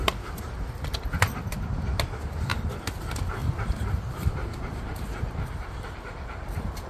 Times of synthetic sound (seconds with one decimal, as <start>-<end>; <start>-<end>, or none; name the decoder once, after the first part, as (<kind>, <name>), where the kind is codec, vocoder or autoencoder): 3.4-6.9 (vocoder, BigVGAN v2)